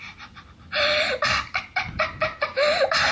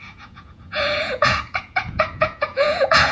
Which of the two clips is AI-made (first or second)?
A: second